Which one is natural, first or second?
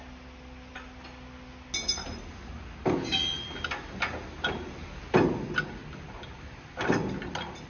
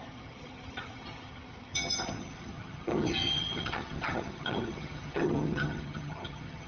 first